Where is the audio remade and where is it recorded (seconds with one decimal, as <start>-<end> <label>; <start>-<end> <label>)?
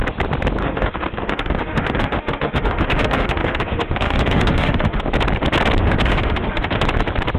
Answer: 0.0-0.6 recorded; 0.6-5.0 remade; 5.0-5.8 recorded; 5.8-6.8 remade; 6.8-7.4 recorded